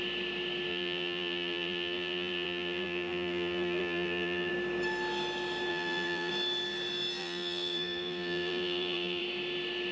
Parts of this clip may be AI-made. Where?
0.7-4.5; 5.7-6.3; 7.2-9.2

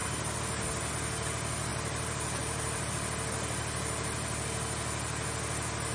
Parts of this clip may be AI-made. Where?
1.7-2.9

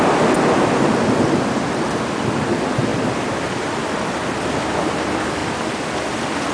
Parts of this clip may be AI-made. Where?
2.9-3.4; 5.4-6.1

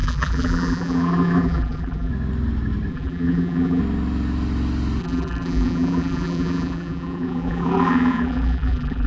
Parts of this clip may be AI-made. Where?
0.0-2.1; 2.9-3.8; 5.0-9.1

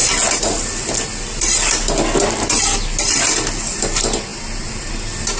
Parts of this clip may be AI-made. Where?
4.3-4.9